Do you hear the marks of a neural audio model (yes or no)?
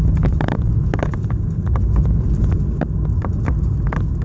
no